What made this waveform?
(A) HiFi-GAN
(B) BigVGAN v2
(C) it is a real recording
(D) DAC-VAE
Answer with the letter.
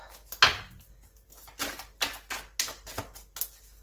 C